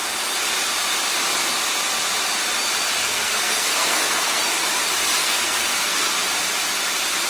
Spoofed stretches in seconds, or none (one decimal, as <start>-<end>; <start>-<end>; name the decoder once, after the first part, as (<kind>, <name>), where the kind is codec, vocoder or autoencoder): 3.0-4.4 (codec, SNAC); 5.2-6.1